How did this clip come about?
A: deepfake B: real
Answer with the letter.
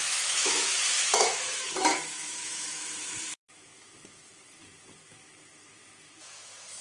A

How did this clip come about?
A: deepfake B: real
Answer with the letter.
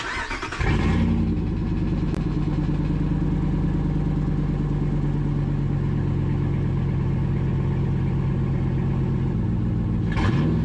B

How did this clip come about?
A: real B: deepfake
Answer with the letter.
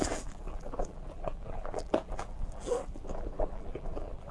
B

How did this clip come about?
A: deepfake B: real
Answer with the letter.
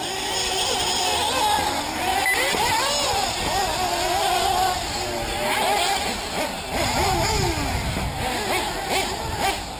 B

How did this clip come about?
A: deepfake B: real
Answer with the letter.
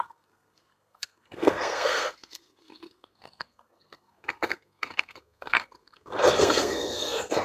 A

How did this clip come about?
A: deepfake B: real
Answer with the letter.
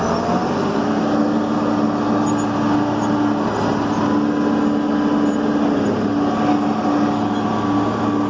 B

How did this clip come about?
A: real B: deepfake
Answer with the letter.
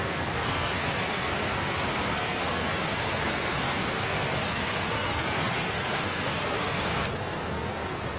B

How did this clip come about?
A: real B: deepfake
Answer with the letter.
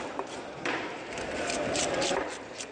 B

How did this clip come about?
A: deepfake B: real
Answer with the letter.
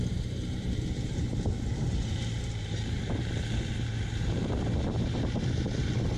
A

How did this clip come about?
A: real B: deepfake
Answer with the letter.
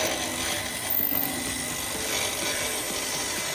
A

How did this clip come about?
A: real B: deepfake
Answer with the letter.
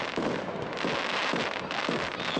A